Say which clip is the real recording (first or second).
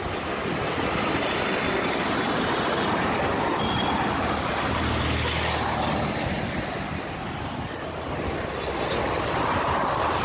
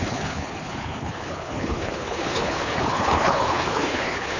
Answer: first